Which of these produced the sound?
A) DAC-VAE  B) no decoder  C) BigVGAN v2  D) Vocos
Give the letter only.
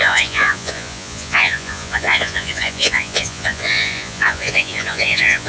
D